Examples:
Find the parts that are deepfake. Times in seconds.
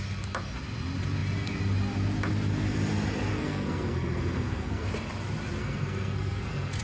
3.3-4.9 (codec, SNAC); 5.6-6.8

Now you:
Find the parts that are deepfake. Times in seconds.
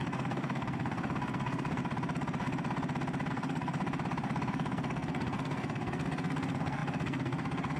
0.0-1.8 (codec, SNAC); 3.3-3.8; 4.5-7.8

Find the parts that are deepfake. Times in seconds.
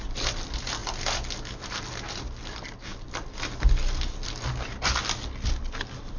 none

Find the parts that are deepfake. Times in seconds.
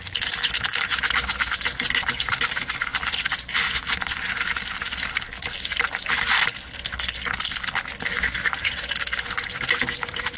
none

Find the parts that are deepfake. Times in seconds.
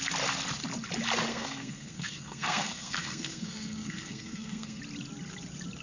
1.3-4.8 (codec, SNAC)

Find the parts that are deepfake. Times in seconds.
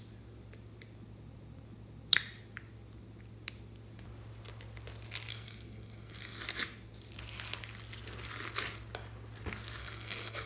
5.3-6.4 (codec, SNAC); 9.8-10.5